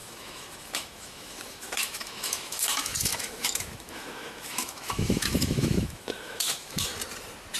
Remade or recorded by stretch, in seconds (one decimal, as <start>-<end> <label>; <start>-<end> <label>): 0.0-6.9 remade; 6.9-7.6 recorded

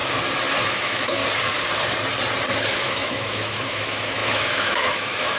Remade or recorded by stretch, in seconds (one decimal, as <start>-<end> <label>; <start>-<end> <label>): 0.0-0.7 recorded; 0.7-1.2 remade; 1.2-2.6 recorded; 2.6-5.4 remade